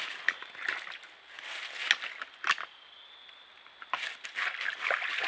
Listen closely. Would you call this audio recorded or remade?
recorded